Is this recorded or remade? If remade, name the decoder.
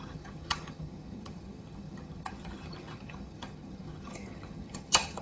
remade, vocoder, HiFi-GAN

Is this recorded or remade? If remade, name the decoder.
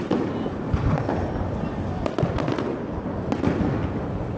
recorded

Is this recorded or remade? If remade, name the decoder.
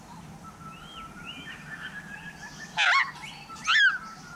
recorded